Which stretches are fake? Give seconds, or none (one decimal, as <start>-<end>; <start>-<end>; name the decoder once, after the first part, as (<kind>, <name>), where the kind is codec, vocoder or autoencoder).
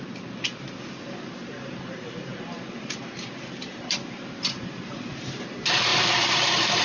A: 0.0-6.8 (vocoder, BigVGAN v2)